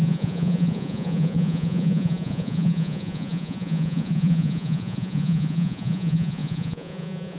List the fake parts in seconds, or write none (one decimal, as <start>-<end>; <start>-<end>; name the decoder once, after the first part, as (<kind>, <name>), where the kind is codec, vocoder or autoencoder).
0.0-7.4 (vocoder, Vocos)